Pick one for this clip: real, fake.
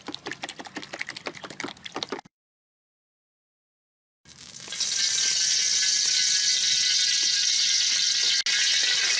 real